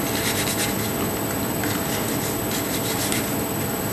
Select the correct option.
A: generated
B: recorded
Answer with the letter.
B